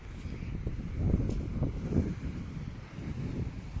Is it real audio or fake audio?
real